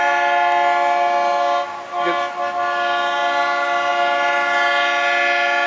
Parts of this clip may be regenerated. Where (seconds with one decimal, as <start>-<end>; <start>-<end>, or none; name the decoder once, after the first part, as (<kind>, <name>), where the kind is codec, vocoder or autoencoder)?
none